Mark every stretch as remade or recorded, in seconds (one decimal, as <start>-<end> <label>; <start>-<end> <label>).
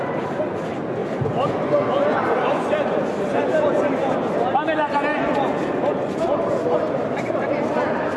0.0-1.0 recorded; 1.0-1.5 remade; 1.5-8.2 recorded